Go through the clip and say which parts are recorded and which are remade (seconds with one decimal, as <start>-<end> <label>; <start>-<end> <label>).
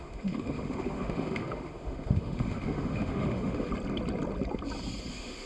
0.0-3.7 remade; 3.7-5.1 recorded; 5.1-5.5 remade